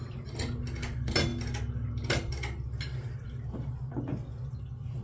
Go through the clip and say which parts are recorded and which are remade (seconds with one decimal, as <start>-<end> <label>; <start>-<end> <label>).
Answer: 0.0-5.0 recorded